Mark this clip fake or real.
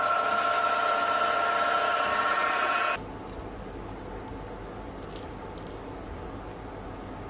real